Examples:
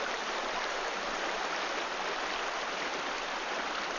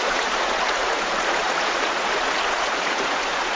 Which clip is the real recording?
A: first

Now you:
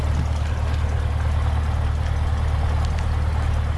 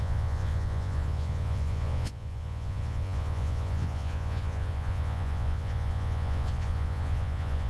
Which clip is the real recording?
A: first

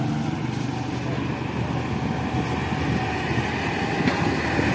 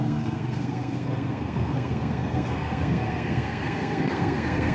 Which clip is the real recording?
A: first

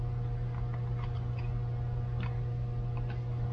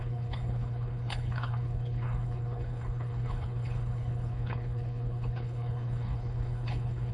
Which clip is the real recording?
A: first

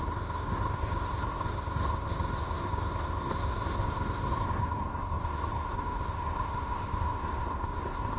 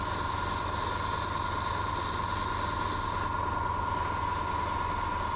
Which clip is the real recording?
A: second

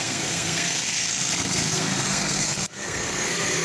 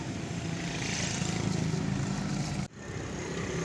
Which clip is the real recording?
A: second